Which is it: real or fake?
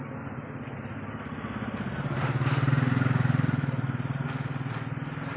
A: real